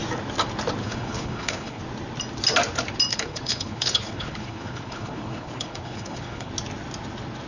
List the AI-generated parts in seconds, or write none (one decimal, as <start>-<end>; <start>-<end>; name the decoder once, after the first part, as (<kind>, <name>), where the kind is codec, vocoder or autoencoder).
0.8-1.8 (codec, HILCodec); 3.1-6.5